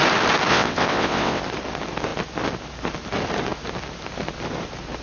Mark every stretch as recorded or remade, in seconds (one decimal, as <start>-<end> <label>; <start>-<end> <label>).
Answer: 0.0-0.5 recorded; 0.5-1.4 remade; 1.4-5.0 recorded